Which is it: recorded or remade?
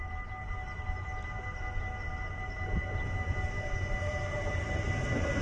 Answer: recorded